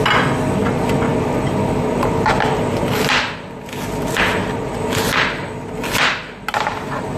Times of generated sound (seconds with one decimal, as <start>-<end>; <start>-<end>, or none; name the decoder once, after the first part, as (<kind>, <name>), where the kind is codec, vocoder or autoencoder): none